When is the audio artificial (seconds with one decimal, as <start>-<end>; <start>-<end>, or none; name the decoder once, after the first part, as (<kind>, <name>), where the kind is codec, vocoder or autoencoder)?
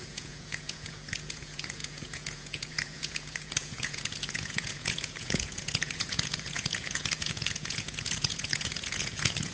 0.0-9.5 (vocoder, Vocos)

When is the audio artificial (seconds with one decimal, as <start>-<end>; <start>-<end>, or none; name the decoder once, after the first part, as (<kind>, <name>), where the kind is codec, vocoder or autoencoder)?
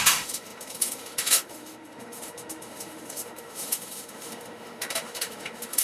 0.0-5.8 (autoencoder, DAC-VAE)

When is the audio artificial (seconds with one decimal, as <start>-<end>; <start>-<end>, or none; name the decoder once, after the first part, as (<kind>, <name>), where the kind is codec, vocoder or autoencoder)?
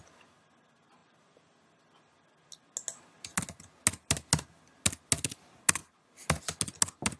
none